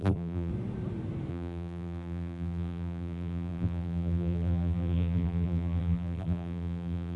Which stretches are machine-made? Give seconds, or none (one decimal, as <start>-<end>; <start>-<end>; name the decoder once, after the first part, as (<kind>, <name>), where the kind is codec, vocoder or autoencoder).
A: 0.0-0.5 (vocoder, BigVGAN v2); 1.3-7.2